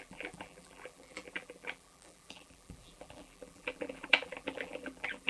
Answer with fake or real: fake